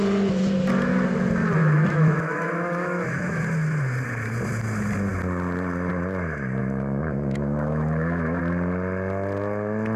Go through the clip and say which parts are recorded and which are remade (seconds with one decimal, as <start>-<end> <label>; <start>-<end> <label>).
0.0-1.6 recorded; 1.6-3.4 remade; 3.4-6.6 recorded; 6.6-8.4 remade; 8.4-10.0 recorded